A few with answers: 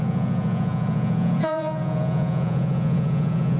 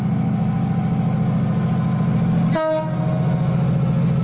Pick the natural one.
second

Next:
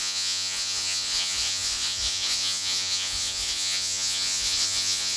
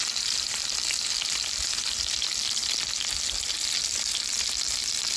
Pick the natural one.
second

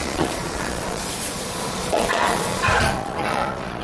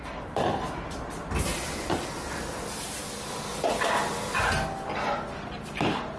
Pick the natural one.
second